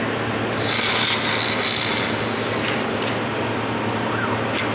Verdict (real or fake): real